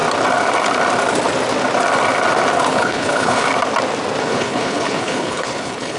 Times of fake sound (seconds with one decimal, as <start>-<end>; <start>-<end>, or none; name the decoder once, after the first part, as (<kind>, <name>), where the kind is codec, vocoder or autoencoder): 2.7-3.5 (codec, HILCodec); 4.2-6.0